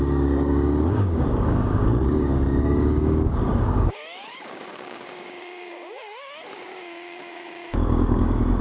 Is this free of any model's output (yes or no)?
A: no